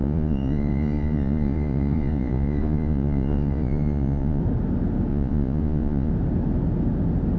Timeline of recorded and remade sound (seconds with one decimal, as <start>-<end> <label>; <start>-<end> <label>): 0.0-4.4 remade; 4.4-5.1 recorded; 5.1-6.1 remade; 6.1-7.4 recorded